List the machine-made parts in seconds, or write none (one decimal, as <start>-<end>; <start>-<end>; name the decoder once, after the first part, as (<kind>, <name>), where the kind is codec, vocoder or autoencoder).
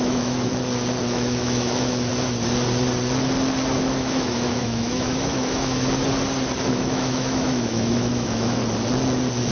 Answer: 0.0-0.5 (autoencoder, DAC-VAE); 1.0-2.1; 3.8-6.0; 6.7-8.6